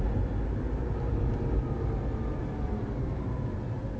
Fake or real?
real